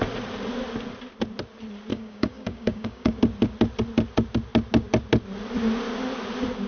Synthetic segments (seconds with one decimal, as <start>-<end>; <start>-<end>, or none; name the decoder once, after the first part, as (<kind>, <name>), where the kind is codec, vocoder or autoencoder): 1.9-3.2 (codec, DAC)